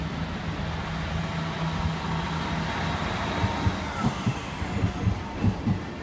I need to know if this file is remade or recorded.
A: recorded